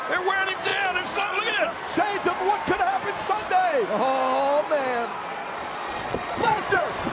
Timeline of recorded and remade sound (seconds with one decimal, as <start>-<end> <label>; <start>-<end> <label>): 0.0-5.1 recorded; 5.1-7.1 remade